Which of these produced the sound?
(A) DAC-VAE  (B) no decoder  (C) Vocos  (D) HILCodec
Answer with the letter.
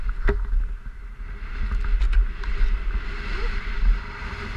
B